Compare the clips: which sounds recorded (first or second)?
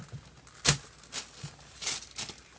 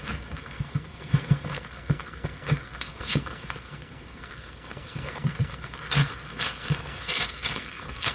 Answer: first